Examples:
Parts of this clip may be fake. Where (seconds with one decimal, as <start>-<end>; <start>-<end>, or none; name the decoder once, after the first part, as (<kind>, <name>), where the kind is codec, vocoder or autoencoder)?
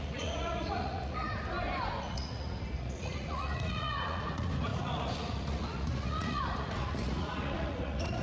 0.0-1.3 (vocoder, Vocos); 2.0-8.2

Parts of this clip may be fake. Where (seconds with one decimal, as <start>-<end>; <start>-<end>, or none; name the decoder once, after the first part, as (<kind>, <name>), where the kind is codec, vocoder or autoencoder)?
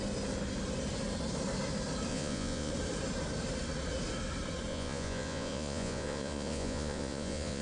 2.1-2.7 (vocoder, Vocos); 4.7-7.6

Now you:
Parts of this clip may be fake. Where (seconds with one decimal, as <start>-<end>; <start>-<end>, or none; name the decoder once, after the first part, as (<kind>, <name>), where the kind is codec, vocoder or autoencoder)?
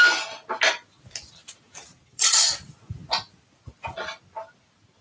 1.9-2.4 (vocoder, Vocos)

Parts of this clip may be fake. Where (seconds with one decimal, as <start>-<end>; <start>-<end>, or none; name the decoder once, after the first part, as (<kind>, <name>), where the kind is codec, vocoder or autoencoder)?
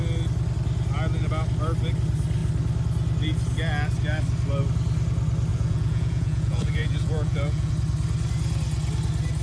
5.5-7.7 (vocoder, Vocos)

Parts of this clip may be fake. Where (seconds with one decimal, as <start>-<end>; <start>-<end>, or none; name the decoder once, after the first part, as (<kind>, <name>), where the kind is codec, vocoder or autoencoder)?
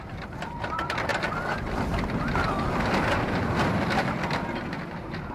none